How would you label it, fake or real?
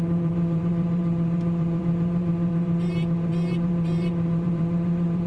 fake